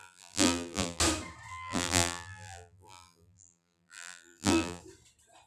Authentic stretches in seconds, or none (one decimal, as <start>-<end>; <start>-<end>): 1.0-1.5; 4.8-5.5